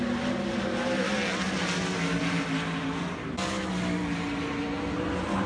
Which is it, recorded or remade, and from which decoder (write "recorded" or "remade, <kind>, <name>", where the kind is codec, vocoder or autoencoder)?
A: recorded